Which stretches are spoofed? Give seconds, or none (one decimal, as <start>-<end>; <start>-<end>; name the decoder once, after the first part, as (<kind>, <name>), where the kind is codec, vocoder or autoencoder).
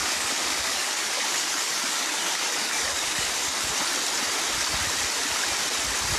0.0-3.7 (codec, DAC)